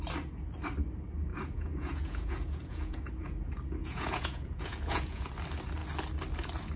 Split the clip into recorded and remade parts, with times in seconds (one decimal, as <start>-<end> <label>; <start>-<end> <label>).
0.0-1.3 recorded; 1.3-3.0 remade; 3.0-3.8 recorded; 3.8-5.3 remade; 5.3-6.8 recorded